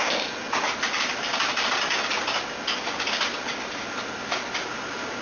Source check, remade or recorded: recorded